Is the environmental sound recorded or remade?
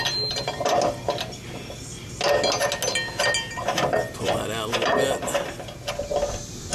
recorded